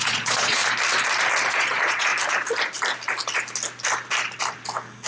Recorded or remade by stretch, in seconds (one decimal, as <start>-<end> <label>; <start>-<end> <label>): 0.0-0.6 remade; 0.6-1.5 recorded; 1.5-2.1 remade; 2.1-5.1 recorded

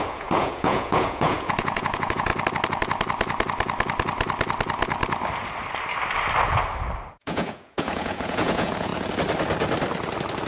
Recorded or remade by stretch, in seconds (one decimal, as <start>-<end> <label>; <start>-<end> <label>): 0.0-2.3 remade; 2.3-7.1 recorded; 7.1-8.9 remade; 8.9-10.5 recorded

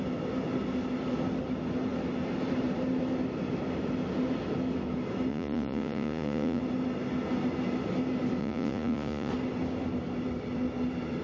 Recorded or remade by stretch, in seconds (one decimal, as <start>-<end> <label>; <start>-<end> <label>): 0.0-5.3 recorded; 5.3-6.6 remade; 6.6-8.4 recorded; 8.4-9.3 remade; 9.3-11.2 recorded